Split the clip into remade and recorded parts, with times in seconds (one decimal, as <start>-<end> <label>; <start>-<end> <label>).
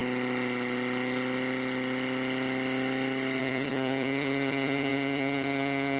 0.0-3.4 recorded; 3.4-6.0 remade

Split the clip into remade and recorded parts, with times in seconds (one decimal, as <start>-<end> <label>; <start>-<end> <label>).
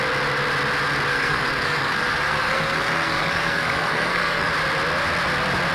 0.0-1.1 recorded; 1.1-4.5 remade; 4.5-5.7 recorded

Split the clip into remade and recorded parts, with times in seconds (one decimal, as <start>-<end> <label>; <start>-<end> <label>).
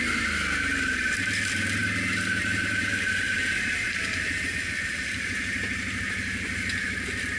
0.0-7.4 recorded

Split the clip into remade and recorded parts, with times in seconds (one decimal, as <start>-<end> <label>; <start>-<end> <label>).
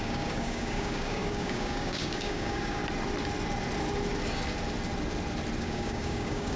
0.0-2.8 remade; 2.8-5.6 recorded; 5.6-6.6 remade